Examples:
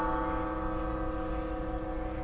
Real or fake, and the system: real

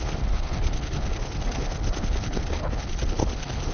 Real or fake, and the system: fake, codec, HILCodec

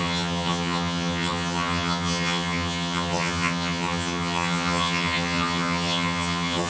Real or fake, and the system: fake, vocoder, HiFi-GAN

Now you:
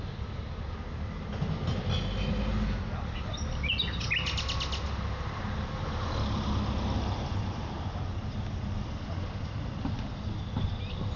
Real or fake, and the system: real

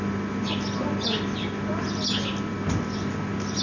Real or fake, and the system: real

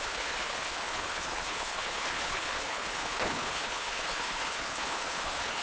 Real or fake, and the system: fake, codec, HILCodec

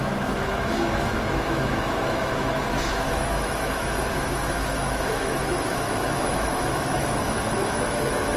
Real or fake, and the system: fake, autoencoder, DAC-VAE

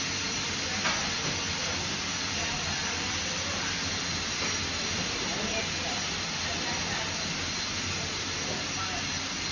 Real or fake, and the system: real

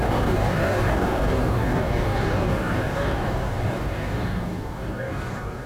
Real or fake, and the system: fake, codec, DAC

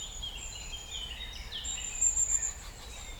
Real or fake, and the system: fake, vocoder, BigVGAN v2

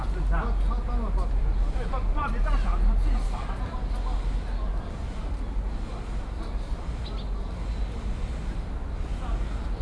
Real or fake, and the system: real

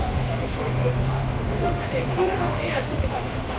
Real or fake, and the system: fake, autoencoder, DAC-VAE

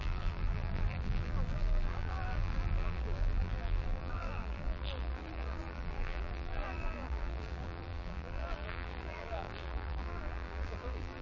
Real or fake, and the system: fake, vocoder, BigVGAN v2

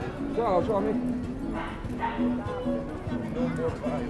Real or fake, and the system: real